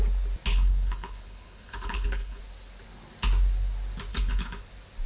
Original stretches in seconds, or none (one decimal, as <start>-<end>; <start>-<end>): 0.0-0.5; 2.4-4.1; 4.6-5.1